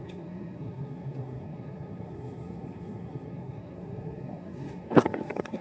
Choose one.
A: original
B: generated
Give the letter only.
B